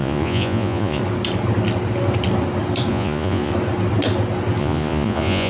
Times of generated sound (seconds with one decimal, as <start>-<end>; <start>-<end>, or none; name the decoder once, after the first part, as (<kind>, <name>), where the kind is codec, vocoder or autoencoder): 0.0-1.0 (vocoder, Vocos); 2.9-3.5; 4.6-5.5